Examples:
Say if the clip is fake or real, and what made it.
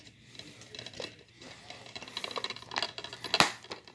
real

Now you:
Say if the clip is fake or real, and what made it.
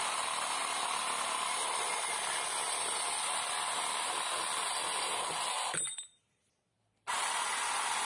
real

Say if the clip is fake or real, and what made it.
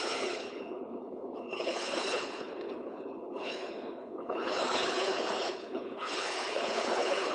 fake, codec, HILCodec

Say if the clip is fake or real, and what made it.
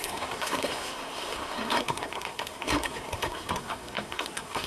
fake, codec, SNAC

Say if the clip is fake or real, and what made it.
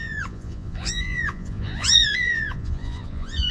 fake, vocoder, Vocos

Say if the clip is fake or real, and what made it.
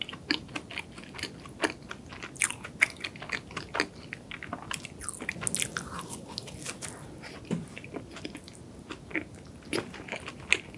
real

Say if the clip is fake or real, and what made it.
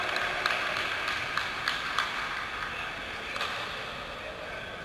real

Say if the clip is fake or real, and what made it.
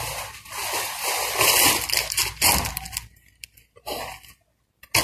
real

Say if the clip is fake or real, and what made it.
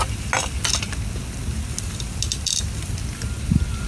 real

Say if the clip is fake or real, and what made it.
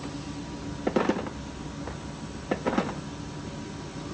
real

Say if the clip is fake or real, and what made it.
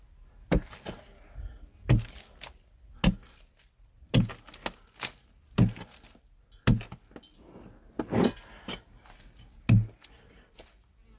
real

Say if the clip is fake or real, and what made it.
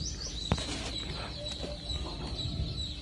real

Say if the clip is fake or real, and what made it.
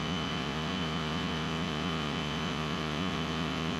fake, vocoder, Vocos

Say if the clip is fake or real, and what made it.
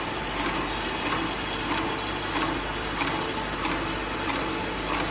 real